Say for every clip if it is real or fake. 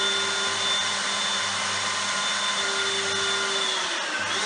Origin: real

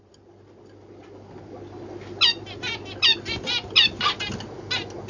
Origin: real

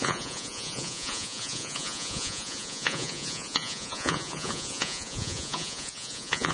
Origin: fake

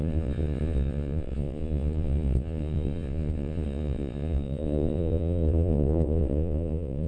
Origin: fake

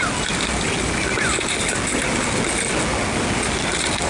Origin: real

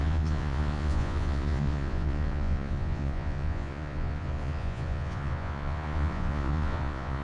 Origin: fake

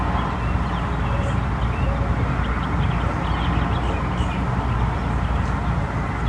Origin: real